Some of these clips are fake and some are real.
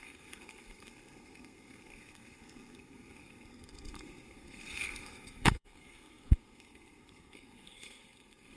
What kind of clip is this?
fake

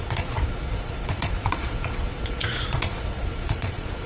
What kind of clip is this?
fake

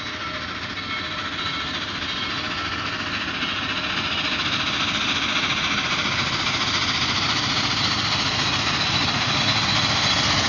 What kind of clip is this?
real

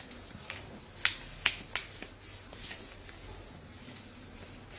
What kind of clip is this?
real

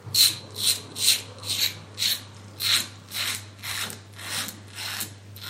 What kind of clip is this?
real